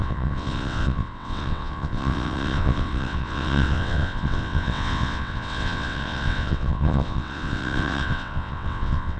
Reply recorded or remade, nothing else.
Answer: remade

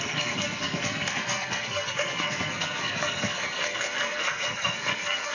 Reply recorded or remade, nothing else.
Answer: remade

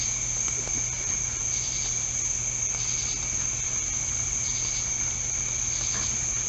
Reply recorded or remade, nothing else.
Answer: recorded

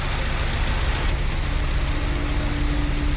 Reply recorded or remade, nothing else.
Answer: recorded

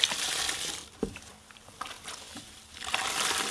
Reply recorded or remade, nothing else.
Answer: remade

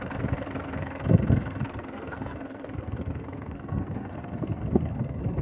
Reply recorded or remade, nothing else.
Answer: remade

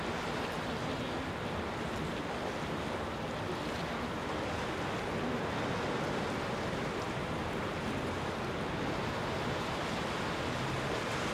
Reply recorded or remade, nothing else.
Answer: recorded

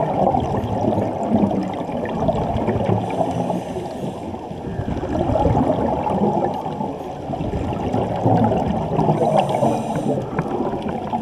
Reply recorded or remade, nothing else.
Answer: recorded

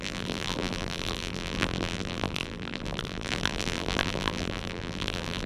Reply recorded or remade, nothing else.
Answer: remade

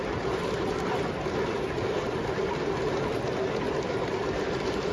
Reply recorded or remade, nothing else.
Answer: recorded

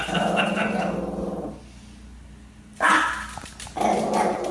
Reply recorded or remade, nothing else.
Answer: recorded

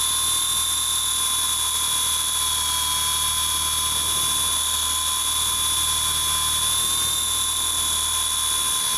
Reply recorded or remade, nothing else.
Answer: recorded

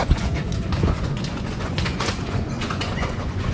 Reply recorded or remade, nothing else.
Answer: remade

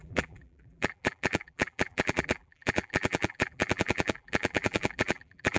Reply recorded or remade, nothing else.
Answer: remade